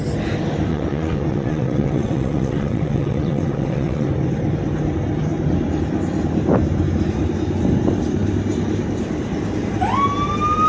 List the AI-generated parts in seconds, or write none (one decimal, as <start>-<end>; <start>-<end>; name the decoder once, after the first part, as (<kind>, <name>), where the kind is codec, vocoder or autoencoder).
0.7-4.1 (vocoder, WaveNeXt)